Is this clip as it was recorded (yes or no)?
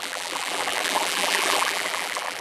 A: no